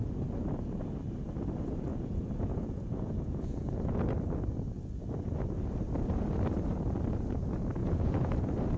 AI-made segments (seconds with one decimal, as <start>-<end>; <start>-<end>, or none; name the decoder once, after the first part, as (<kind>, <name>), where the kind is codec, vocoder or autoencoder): 1.9-3.8 (vocoder, Vocos); 7.8-8.3